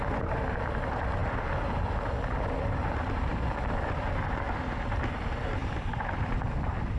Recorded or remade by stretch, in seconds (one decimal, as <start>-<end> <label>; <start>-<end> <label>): 0.0-5.6 recorded; 5.6-6.4 remade; 6.4-7.0 recorded